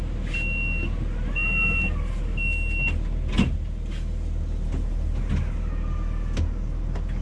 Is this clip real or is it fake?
real